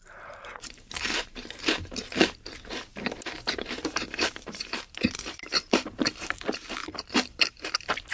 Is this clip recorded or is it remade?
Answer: remade